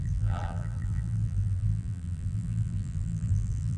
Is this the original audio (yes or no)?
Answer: no